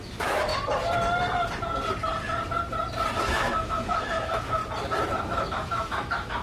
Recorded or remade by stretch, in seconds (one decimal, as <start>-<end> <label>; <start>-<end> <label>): 0.0-0.5 remade; 0.5-3.2 recorded; 3.2-4.6 remade; 4.6-5.2 recorded; 5.2-6.4 remade